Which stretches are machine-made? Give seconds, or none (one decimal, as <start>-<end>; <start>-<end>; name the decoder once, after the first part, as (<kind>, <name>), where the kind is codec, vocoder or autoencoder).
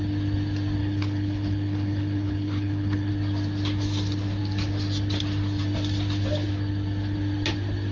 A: 0.8-3.1 (codec, HILCodec)